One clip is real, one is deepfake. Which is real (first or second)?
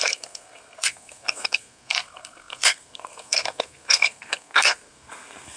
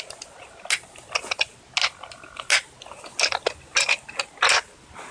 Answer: second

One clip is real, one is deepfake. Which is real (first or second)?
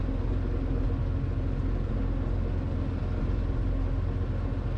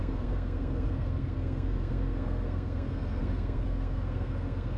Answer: first